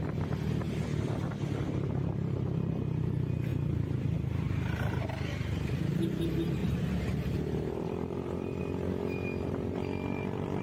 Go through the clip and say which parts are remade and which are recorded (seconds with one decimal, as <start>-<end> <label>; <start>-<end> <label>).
0.0-3.5 recorded; 3.5-6.0 remade; 6.0-6.6 recorded; 6.6-8.6 remade; 8.6-10.6 recorded